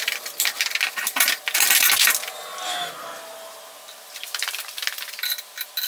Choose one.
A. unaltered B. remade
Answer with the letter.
A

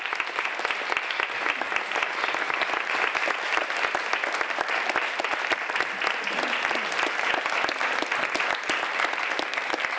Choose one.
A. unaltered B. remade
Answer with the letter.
A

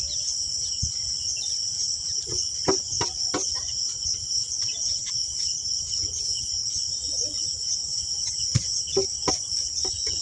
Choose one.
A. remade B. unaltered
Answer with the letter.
B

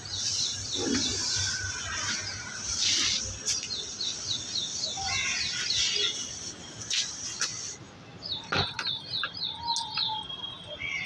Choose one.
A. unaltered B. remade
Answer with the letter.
A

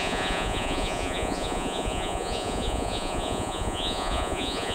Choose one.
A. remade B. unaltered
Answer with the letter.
A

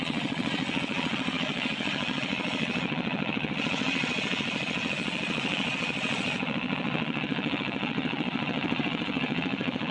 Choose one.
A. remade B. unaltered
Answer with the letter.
A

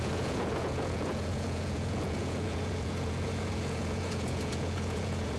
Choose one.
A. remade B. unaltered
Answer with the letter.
A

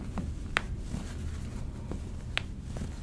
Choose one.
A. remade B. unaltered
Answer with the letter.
B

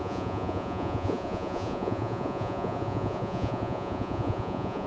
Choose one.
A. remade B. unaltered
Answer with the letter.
A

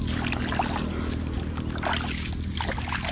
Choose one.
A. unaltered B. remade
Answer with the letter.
A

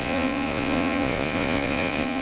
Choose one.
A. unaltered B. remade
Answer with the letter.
B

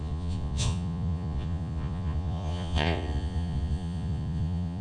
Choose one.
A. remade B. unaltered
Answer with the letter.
A